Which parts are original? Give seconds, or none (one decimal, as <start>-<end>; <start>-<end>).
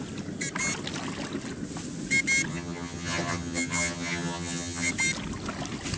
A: 0.0-2.5; 4.9-6.0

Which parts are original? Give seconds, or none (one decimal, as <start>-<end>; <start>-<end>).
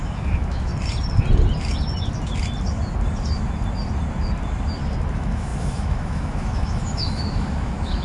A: 0.7-5.1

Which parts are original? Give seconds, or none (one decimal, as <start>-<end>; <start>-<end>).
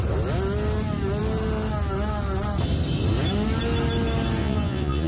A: 0.0-4.4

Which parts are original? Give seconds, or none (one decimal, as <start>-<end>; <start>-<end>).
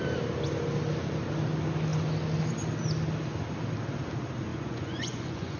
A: 0.0-4.5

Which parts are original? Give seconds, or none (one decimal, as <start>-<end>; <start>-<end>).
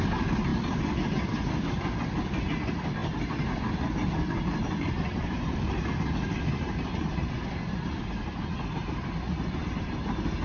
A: 0.0-10.4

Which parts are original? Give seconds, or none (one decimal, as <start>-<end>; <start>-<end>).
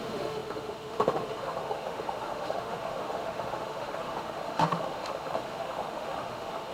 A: none